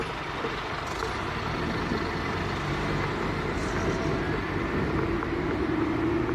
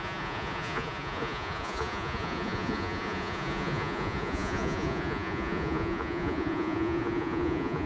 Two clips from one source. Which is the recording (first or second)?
first